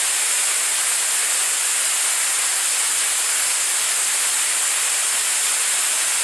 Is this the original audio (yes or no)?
yes